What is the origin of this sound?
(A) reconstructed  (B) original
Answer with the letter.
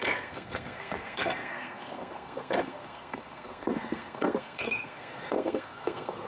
A